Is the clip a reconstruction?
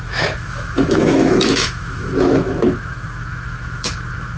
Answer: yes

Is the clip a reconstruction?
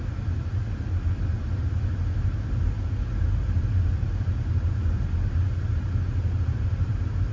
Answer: no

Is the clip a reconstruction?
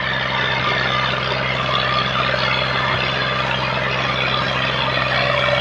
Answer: no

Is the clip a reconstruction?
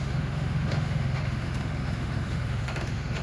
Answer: yes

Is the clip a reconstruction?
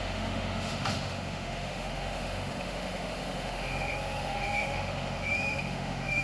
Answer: yes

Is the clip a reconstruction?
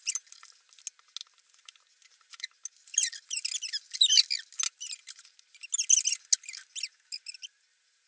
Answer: no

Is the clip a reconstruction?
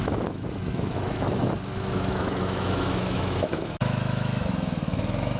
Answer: yes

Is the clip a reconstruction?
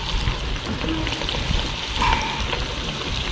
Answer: no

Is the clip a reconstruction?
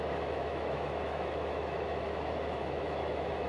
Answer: yes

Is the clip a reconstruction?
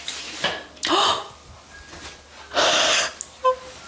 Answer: no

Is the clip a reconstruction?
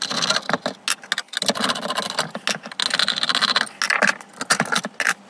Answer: no